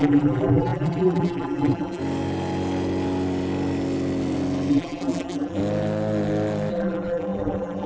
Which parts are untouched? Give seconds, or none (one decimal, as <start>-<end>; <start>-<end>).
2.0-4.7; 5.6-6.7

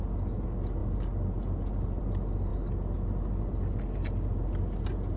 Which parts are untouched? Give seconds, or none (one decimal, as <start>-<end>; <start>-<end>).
0.0-5.2

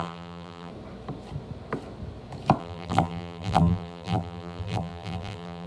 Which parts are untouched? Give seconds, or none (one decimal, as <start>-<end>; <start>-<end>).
0.7-2.6

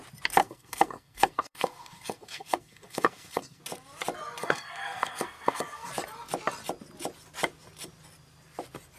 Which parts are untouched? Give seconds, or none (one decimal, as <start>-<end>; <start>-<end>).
0.0-0.4; 3.6-4.4; 5.9-9.0